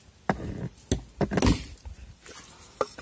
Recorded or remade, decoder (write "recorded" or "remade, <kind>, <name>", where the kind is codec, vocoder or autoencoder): recorded